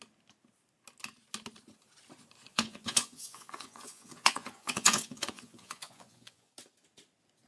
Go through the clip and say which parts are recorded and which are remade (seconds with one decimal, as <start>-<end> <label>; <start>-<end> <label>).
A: 0.0-2.5 recorded; 2.5-6.5 remade; 6.5-7.5 recorded